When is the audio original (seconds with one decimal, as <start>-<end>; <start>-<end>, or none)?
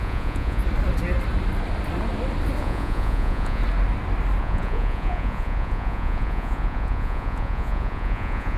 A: 0.6-2.6; 3.6-4.4